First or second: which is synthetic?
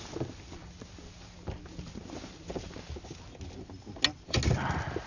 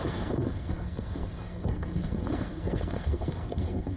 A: second